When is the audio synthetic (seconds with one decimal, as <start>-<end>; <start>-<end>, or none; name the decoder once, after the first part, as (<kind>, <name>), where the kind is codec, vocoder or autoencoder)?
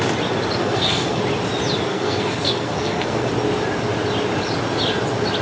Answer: 0.6-1.2 (codec, SNAC); 1.9-3.3